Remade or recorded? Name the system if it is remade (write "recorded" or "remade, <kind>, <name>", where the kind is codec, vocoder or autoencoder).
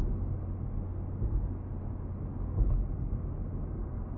recorded